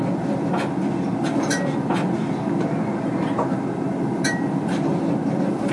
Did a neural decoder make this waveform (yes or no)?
no